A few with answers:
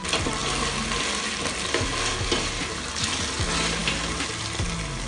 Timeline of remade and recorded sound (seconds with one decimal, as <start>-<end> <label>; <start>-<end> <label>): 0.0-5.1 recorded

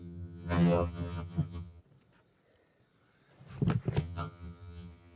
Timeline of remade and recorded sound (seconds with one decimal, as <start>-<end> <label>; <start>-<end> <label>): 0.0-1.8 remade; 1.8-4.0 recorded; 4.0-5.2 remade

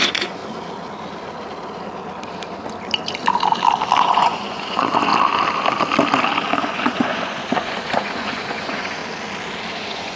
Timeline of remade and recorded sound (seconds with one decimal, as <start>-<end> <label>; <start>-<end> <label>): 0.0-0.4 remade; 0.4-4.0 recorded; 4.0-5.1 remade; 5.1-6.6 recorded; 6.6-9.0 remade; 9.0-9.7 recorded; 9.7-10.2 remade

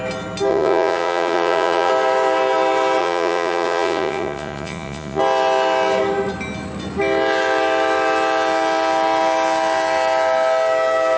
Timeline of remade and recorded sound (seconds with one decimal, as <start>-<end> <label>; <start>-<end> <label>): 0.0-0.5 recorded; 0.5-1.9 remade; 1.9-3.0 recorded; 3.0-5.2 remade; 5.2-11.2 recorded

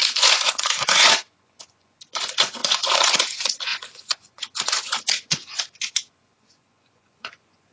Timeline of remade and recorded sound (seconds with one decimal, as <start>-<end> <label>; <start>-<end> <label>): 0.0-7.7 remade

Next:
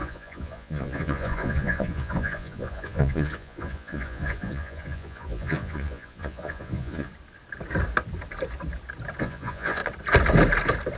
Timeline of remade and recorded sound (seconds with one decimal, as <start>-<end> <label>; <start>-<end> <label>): 0.0-7.1 remade; 7.1-9.2 recorded; 9.2-9.8 remade; 9.8-11.0 recorded

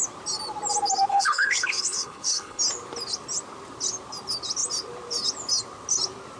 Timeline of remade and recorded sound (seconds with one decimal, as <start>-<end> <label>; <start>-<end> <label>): 0.0-1.1 recorded; 1.1-2.6 remade; 2.6-6.4 recorded